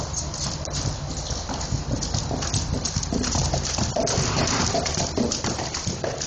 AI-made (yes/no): yes